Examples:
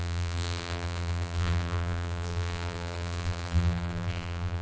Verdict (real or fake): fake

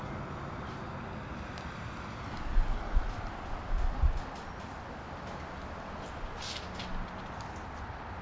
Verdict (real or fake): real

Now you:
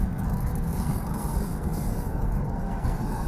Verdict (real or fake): fake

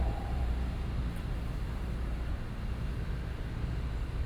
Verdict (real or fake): fake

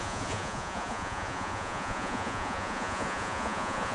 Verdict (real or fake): fake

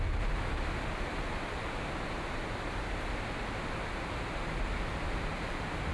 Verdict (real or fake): real